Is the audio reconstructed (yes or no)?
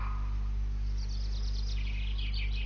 no